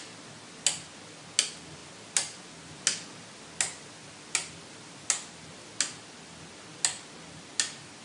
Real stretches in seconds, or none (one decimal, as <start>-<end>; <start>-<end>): 0.0-8.0